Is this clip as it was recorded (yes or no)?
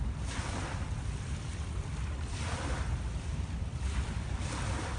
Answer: no